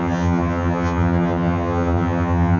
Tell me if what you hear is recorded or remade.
remade